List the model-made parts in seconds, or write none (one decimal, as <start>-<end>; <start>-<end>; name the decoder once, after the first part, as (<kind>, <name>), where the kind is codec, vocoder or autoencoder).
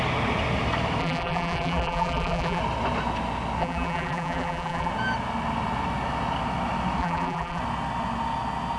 1.0-2.6 (vocoder, BigVGAN v2); 3.6-4.9; 7.0-7.6